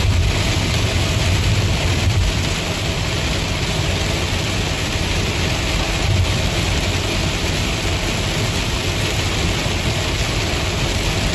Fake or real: real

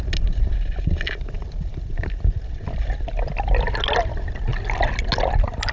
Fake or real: real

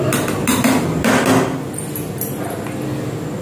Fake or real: real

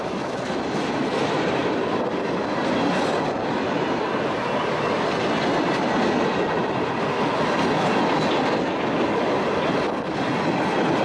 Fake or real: real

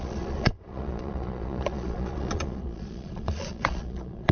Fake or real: fake